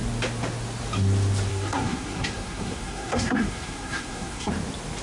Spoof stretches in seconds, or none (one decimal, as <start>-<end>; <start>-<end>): 1.5-4.5